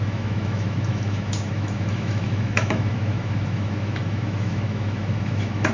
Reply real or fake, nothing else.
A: fake